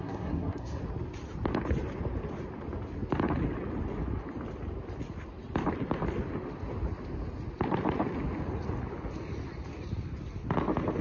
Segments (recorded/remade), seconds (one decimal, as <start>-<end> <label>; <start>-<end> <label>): 0.0-0.8 remade; 0.8-11.0 recorded